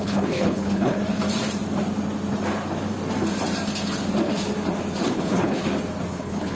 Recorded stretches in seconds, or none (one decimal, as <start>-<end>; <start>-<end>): 1.0-5.0; 5.6-6.1